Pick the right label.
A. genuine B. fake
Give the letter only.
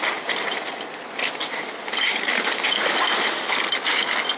A